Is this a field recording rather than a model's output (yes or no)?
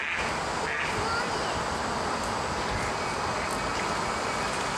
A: yes